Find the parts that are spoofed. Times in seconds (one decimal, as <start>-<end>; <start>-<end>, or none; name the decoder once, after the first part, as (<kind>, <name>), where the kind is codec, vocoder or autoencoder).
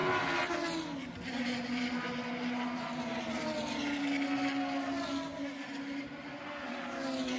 none